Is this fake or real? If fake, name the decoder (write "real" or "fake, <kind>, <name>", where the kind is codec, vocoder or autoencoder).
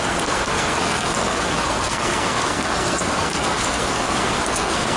fake, codec, SNAC